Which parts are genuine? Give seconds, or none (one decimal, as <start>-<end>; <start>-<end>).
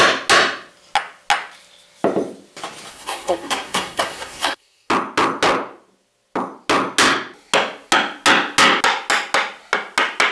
0.0-2.9; 4.9-10.3